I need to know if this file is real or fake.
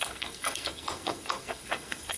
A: fake